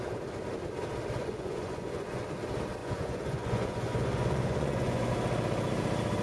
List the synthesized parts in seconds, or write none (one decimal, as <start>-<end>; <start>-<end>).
1.2-2.2; 2.8-5.1